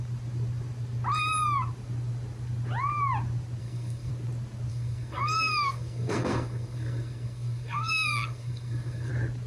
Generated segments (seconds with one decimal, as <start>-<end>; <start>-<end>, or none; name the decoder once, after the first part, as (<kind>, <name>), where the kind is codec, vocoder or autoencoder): 3.6-4.1 (codec, SNAC); 4.7-9.1